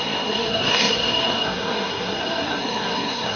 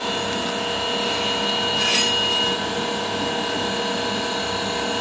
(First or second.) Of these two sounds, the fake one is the first